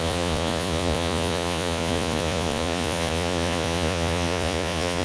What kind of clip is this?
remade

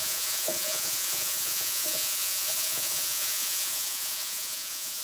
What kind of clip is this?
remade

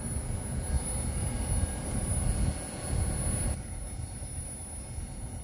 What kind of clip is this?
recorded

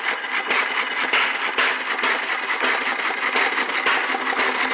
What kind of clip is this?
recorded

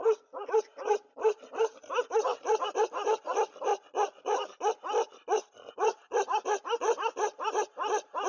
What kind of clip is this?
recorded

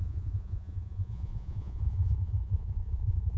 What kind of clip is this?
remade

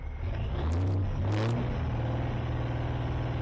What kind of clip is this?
recorded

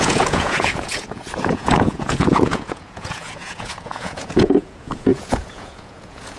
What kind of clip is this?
remade